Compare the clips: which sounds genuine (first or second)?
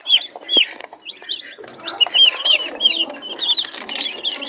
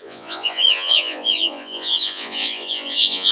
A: first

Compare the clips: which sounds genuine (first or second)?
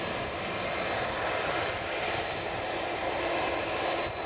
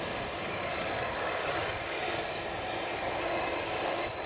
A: first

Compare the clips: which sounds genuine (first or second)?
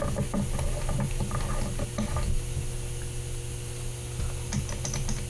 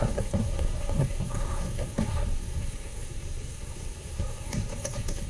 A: first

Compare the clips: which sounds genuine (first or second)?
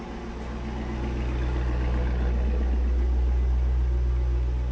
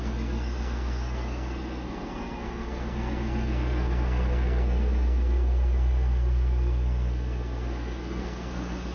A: first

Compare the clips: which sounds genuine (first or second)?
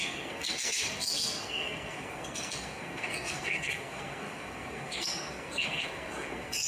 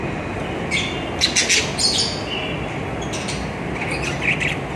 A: second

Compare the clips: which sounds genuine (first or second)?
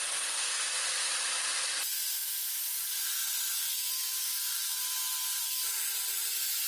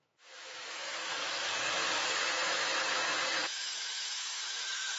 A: first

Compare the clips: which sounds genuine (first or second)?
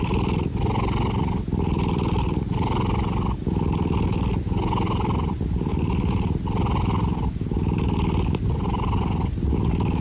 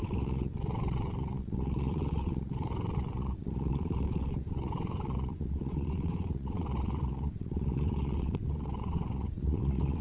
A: first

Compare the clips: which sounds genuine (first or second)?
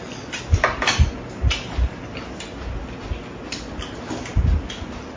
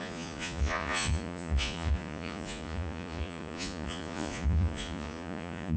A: first